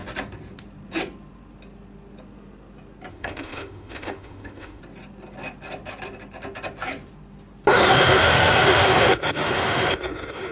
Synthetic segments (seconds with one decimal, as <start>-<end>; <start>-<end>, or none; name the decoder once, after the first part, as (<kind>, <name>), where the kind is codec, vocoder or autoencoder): 3.1-4.8 (autoencoder, DAC-VAE); 7.7-10.5